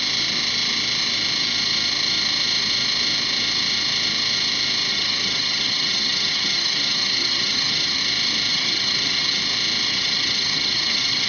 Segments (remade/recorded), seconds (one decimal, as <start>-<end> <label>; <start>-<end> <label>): 0.0-4.9 recorded; 4.9-8.0 remade; 8.0-8.5 recorded; 8.5-9.4 remade; 9.4-9.9 recorded; 9.9-11.3 remade